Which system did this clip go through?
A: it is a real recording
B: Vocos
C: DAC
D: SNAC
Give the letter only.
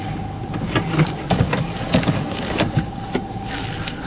C